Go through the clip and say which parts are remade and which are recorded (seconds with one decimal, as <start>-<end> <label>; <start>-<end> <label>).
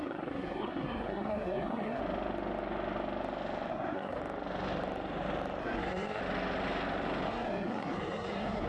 0.0-2.0 remade; 2.0-3.7 recorded; 3.7-4.2 remade; 4.2-5.6 recorded; 5.6-6.2 remade; 6.2-7.3 recorded; 7.3-8.7 remade